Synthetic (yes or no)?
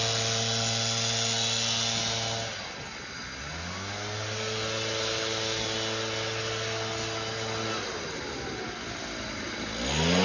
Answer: no